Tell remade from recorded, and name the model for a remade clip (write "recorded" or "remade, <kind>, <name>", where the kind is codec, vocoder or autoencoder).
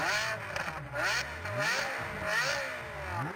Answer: recorded